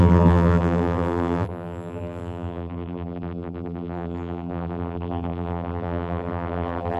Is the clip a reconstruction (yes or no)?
yes